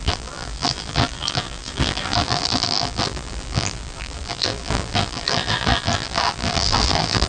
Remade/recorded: remade